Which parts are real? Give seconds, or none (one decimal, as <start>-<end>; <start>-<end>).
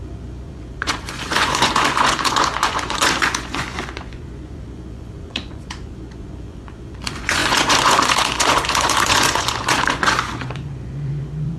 none